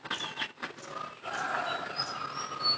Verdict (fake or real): real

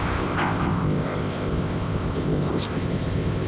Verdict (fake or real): fake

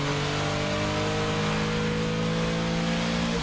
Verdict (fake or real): real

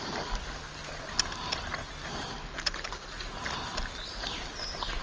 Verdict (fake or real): real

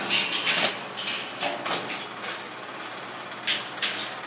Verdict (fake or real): real